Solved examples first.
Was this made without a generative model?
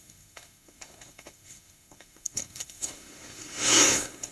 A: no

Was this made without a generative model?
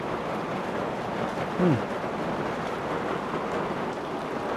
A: yes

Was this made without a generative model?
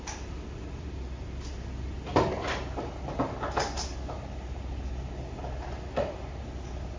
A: yes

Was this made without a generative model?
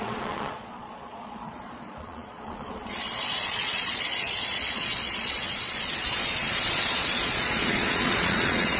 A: no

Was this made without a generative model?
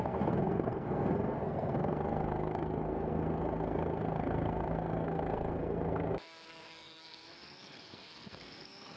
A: no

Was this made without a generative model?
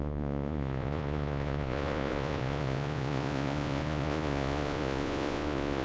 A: no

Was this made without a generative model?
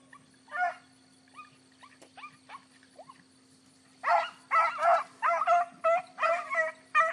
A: yes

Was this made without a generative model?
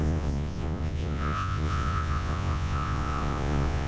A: no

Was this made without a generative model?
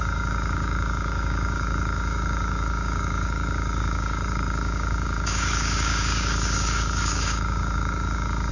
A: no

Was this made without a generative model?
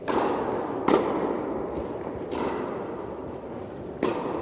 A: yes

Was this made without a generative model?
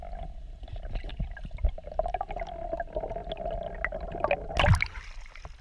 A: yes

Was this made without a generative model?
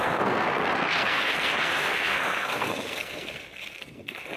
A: no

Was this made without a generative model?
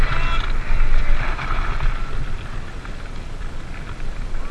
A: yes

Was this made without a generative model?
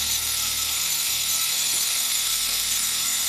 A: no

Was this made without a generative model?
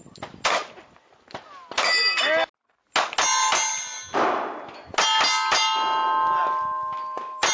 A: yes